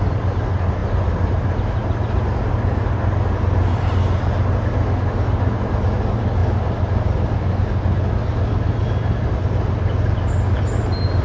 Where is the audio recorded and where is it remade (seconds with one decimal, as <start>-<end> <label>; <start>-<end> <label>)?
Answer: 0.0-11.2 recorded